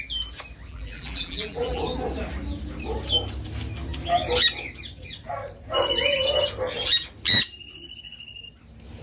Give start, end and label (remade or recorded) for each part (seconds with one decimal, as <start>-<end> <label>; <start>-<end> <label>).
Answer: 0.0-0.7 recorded; 0.7-1.8 remade; 1.8-9.0 recorded